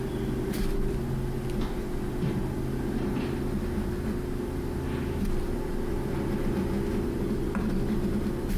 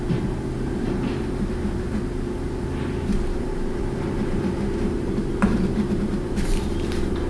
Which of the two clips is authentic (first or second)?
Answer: first